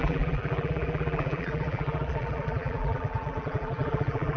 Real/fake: fake